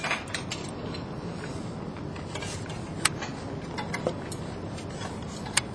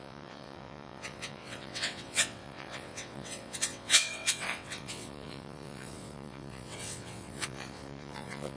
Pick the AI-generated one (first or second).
second